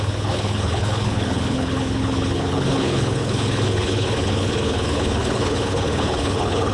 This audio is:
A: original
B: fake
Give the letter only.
B